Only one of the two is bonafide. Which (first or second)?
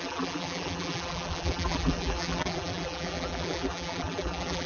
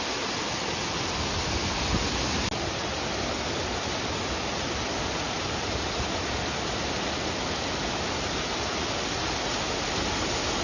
second